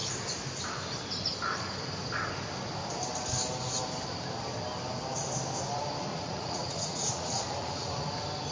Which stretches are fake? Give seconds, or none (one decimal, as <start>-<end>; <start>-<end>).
6.1-8.1